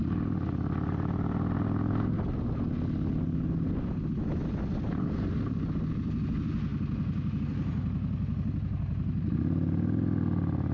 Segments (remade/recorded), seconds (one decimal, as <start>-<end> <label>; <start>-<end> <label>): 0.0-10.7 recorded